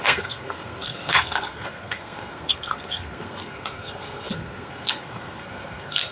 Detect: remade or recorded remade